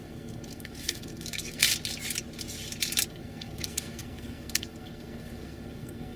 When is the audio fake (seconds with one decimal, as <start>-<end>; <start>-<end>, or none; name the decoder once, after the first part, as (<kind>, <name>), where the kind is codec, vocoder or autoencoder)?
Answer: 0.0-1.7 (codec, SNAC); 3.1-6.2